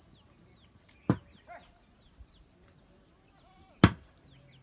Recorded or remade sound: recorded